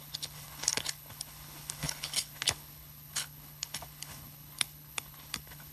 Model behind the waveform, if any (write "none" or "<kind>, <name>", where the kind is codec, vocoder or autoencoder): codec, HILCodec